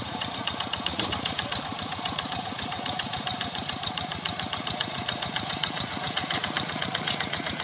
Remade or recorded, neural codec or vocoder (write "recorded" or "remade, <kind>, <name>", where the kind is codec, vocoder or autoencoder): remade, vocoder, Vocos